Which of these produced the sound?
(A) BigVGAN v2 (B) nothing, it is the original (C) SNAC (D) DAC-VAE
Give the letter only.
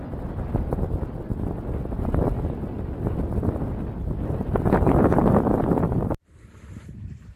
B